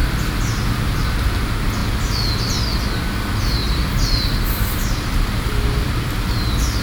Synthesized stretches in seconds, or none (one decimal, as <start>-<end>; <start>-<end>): 3.6-6.1